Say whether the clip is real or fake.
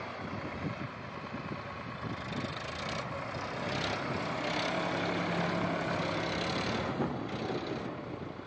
real